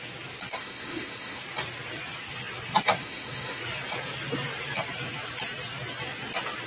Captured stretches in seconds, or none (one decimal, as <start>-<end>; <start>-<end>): 0.0-0.5; 1.4-3.0; 3.6-6.7